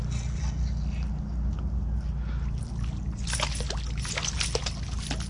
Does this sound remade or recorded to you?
recorded